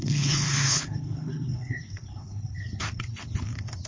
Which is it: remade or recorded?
remade